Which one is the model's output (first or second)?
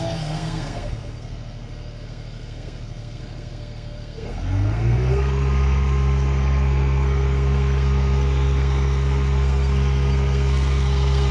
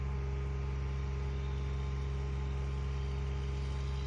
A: first